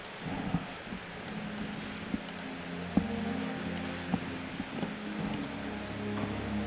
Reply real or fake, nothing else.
real